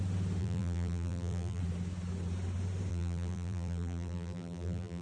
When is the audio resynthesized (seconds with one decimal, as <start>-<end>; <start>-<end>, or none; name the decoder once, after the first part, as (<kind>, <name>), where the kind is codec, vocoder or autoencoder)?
0.4-1.6 (vocoder, BigVGAN v2); 2.9-5.0